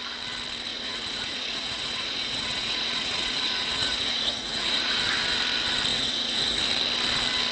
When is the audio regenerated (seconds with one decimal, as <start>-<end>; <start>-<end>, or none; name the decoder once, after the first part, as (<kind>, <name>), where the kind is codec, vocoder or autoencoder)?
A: 0.7-5.0 (vocoder, Vocos); 5.9-6.6